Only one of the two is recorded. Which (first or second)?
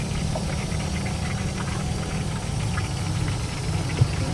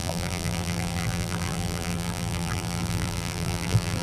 first